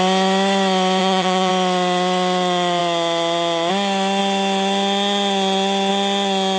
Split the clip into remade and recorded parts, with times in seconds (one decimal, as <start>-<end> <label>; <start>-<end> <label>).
0.0-1.0 recorded; 1.0-1.5 remade; 1.5-6.6 recorded